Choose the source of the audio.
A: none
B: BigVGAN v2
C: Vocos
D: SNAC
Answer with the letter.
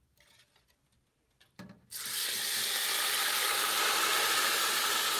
A